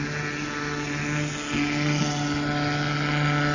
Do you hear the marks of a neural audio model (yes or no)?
no